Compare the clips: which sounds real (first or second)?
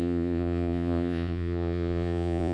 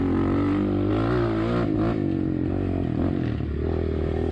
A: second